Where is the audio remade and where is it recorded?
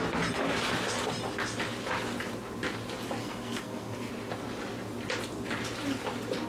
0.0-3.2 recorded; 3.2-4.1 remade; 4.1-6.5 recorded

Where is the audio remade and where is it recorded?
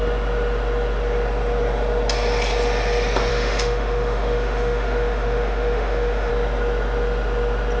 0.0-3.3 recorded; 3.3-6.3 remade; 6.3-7.8 recorded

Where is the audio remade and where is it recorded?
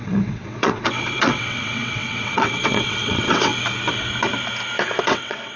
0.0-3.5 remade; 3.5-5.0 recorded; 5.0-5.6 remade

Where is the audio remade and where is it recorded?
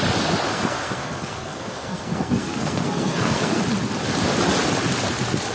0.0-0.5 recorded; 0.5-3.6 remade; 3.6-5.5 recorded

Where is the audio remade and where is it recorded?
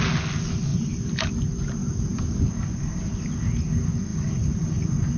0.0-0.7 recorded; 0.7-1.3 remade; 1.3-4.1 recorded; 4.1-4.8 remade; 4.8-5.2 recorded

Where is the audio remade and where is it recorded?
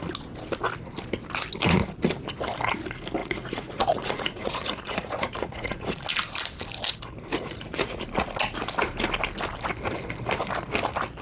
0.0-3.2 recorded; 3.2-6.0 remade; 6.0-7.3 recorded; 7.3-8.0 remade; 8.0-11.2 recorded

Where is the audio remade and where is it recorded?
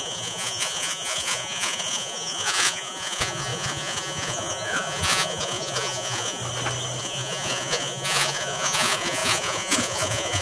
0.0-6.4 remade; 6.4-7.0 recorded; 7.0-10.4 remade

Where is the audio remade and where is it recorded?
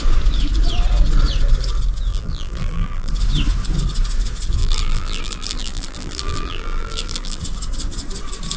0.0-2.1 recorded; 2.1-3.1 remade; 3.1-4.6 recorded; 4.6-7.4 remade; 7.4-8.6 recorded